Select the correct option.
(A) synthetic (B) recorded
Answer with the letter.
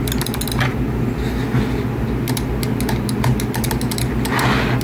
B